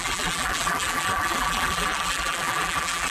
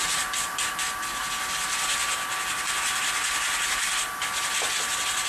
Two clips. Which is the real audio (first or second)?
second